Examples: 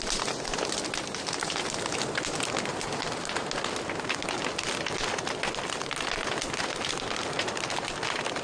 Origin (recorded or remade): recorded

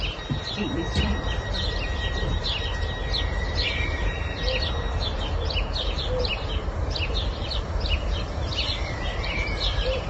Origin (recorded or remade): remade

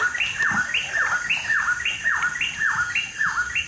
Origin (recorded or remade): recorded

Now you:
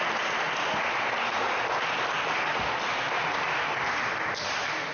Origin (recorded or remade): recorded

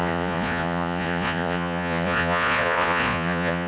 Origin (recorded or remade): remade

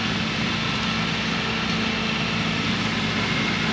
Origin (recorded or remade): recorded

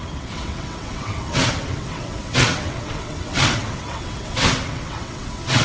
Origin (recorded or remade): remade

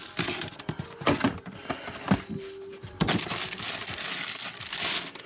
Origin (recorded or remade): recorded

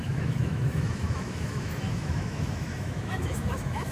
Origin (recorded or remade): remade